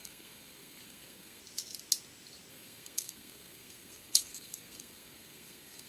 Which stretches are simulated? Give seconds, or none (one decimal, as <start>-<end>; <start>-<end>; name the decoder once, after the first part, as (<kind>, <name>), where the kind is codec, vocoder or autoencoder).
0.0-1.4 (codec, SNAC); 2.5-5.9